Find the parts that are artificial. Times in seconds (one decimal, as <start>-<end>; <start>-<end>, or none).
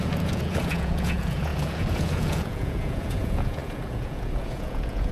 0.0-5.1